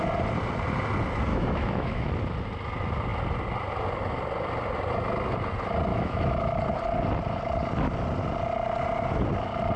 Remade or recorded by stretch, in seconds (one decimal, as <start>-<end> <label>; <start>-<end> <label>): 0.0-1.3 recorded; 1.3-2.1 remade; 2.1-5.9 recorded; 5.9-6.6 remade; 6.6-9.8 recorded